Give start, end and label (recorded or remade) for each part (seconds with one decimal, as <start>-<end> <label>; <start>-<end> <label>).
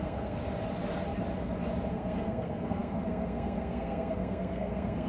0.0-0.4 remade; 0.4-1.9 recorded; 1.9-5.1 remade